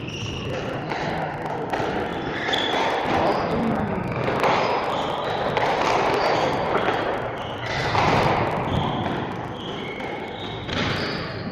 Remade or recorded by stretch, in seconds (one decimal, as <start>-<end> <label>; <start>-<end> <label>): 0.0-11.5 recorded